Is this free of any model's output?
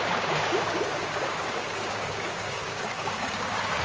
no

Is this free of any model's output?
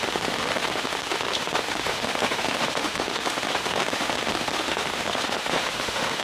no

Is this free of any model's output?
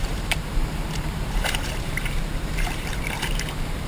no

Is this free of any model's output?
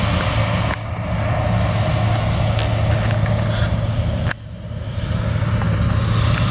yes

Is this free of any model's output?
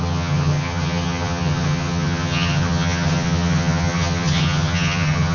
no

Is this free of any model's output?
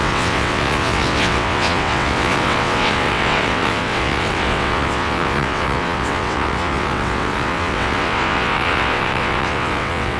no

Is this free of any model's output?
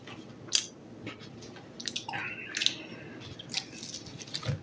yes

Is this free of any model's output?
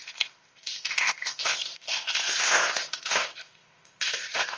no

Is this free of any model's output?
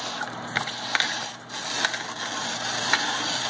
yes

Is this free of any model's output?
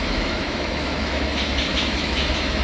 no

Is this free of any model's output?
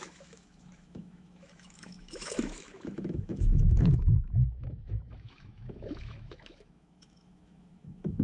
no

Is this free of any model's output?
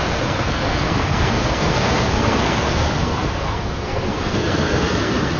no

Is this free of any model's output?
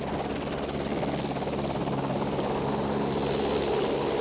yes